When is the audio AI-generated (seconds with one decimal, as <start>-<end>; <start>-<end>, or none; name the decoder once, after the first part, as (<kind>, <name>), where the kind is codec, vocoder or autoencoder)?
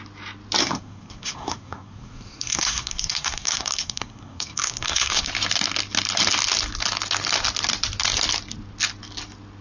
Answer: 0.6-5.3 (codec, SNAC)